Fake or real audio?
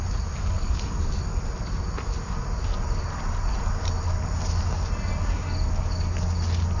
real